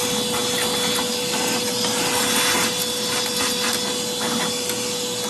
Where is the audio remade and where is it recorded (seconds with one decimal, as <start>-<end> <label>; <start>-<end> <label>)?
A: 0.0-5.3 recorded